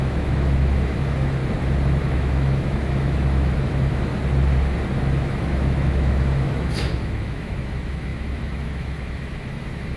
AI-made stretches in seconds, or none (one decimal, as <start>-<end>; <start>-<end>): 0.0-1.4; 2.0-4.1; 5.0-10.0